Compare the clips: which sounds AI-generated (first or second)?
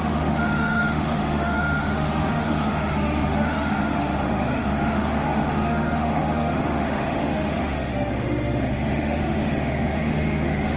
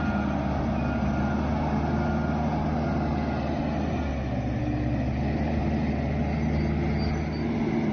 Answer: first